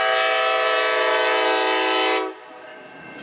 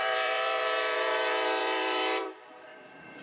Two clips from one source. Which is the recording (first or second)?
first